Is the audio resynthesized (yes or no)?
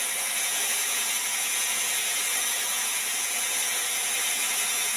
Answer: yes